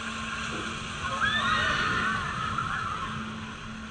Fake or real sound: real